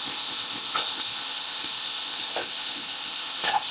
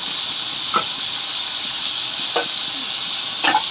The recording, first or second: second